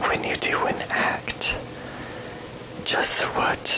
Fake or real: real